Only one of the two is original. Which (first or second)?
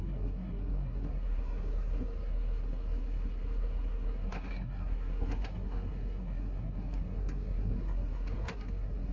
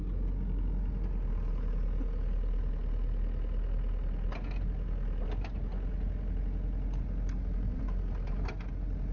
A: second